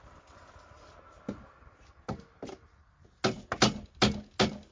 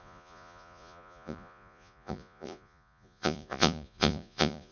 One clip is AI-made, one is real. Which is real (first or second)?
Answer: first